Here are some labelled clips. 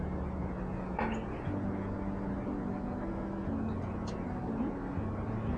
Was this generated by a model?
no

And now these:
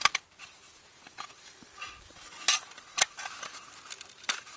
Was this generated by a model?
yes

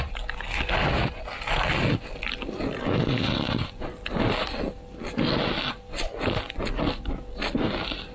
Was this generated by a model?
no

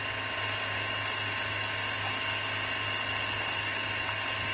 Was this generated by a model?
no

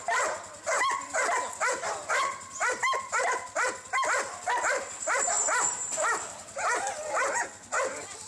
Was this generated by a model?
no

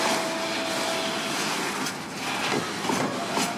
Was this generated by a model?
no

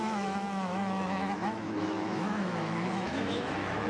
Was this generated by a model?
yes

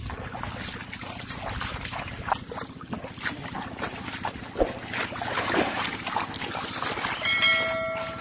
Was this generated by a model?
no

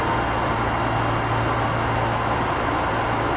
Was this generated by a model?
no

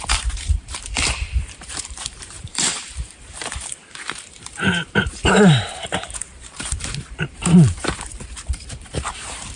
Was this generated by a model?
yes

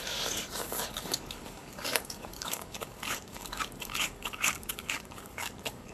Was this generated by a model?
yes